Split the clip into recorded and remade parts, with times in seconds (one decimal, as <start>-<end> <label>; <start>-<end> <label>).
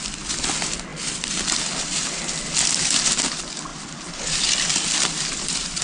0.0-5.8 recorded